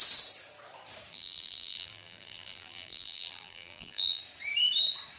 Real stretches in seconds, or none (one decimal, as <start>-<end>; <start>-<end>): 0.0-1.1; 4.2-5.2

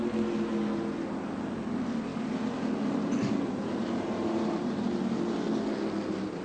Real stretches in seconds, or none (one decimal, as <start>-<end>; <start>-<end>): 0.0-6.4

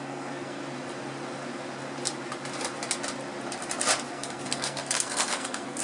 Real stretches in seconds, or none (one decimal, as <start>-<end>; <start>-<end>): 0.6-4.1

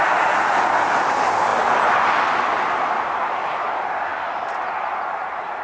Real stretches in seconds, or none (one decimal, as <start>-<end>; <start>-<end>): 0.0-5.6

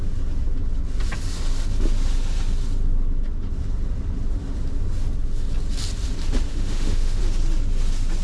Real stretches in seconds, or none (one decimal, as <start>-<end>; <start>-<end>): 0.0-6.5; 7.2-8.2